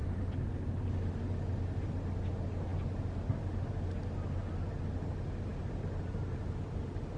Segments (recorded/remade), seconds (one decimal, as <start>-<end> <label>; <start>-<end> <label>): 0.0-7.2 recorded